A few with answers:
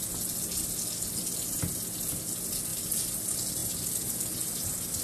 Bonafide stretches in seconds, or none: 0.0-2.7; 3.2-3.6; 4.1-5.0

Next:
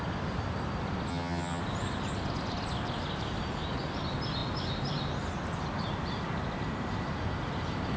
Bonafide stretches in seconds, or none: 0.0-1.1; 1.6-8.0